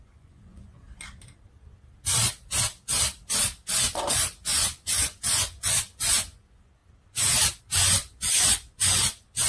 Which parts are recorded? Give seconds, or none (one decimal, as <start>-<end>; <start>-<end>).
0.7-3.7; 6.8-7.6